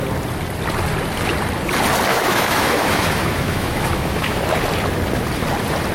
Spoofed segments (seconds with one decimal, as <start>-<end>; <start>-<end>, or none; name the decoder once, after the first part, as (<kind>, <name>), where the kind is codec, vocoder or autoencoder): 2.1-4.4 (autoencoder, DAC-VAE)